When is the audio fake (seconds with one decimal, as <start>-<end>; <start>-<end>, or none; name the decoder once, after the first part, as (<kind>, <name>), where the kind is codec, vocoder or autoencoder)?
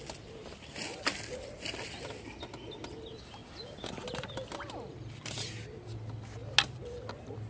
none